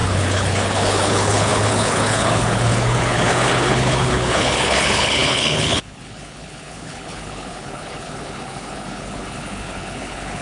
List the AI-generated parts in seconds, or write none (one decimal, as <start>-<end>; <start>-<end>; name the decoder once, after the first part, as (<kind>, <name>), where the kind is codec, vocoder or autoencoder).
0.0-10.4 (codec, HILCodec)